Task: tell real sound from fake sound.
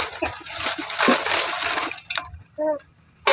real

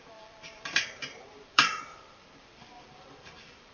fake